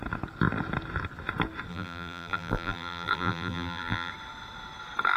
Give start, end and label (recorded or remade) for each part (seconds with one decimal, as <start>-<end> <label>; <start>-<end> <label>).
0.0-1.7 recorded; 1.7-4.1 remade; 4.1-5.2 recorded